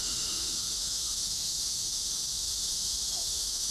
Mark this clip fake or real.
fake